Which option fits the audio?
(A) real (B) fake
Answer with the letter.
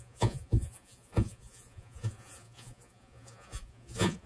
B